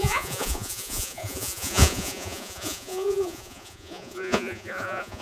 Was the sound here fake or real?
fake